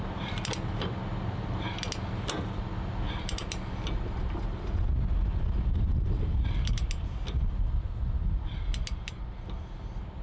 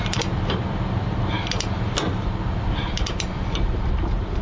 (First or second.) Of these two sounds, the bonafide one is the first